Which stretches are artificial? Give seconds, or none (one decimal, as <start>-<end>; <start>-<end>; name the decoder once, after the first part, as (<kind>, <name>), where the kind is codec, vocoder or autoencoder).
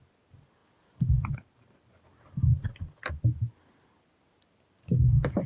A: none